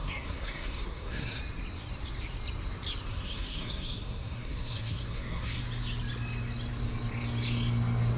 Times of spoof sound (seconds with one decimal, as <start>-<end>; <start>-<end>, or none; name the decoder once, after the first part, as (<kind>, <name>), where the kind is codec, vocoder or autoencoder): 0.0-1.4 (codec, SNAC); 3.1-5.6